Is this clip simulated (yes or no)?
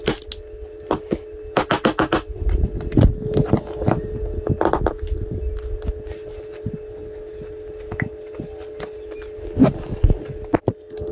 no